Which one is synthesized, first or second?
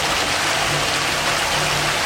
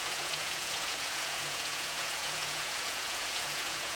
second